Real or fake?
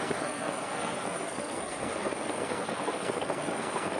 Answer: fake